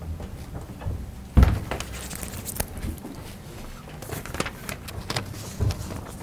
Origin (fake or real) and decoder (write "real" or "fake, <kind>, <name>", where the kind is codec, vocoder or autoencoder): real